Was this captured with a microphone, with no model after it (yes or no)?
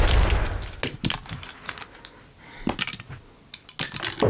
yes